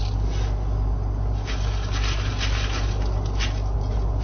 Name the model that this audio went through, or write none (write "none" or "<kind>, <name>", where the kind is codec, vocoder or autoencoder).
none